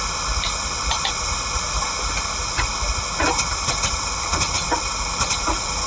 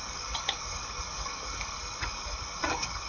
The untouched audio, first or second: first